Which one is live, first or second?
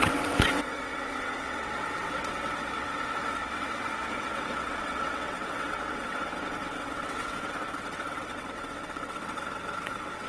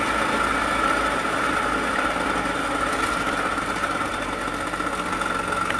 second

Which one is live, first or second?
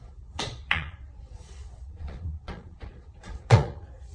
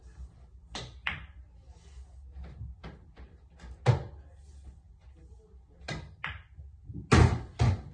second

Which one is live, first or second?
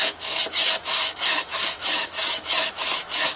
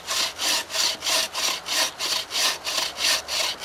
second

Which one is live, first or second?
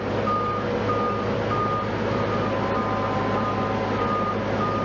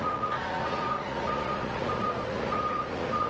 first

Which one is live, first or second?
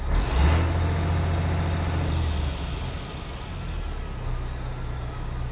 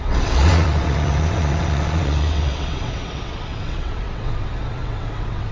first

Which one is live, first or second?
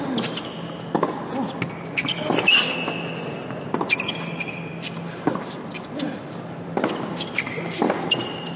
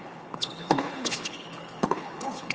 first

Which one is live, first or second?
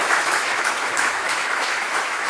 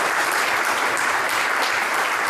second